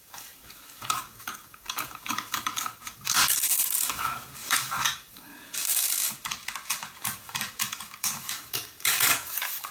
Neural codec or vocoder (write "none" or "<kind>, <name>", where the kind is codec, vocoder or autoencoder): codec, DAC